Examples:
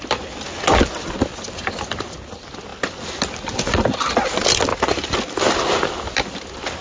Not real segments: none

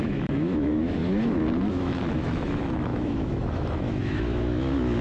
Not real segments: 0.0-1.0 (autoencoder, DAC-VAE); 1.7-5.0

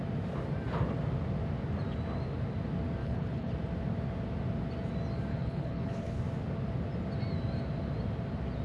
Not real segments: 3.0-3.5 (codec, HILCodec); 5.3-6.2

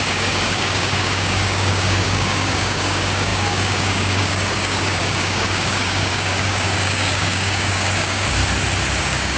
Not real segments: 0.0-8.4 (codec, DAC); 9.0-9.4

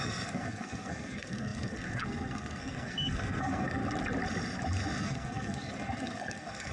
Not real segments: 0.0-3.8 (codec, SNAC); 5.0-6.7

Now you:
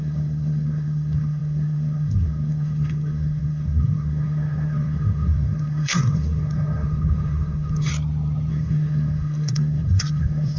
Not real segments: 0.0-7.9 (codec, SNAC); 8.5-10.6

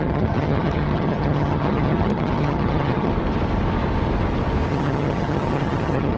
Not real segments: 0.0-3.1 (vocoder, HiFi-GAN); 4.7-6.2

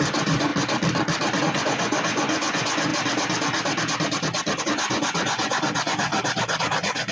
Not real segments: 0.0-0.5 (vocoder, Vocos); 1.4-2.9; 4.6-6.1; 6.6-7.1